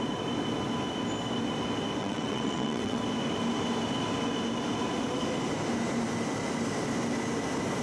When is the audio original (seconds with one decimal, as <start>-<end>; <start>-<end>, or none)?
0.0-2.0; 3.0-7.8